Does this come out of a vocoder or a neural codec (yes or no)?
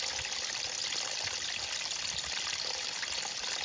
no